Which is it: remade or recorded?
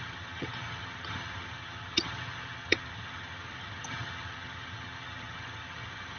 remade